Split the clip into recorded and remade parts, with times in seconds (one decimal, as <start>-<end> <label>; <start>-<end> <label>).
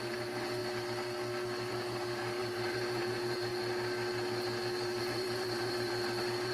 0.0-0.6 remade; 0.6-1.7 recorded; 1.7-3.5 remade; 3.5-5.0 recorded; 5.0-6.5 remade